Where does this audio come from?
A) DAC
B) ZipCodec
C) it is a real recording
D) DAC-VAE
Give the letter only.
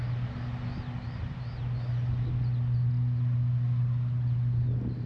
C